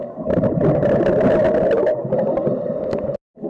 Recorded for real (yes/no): yes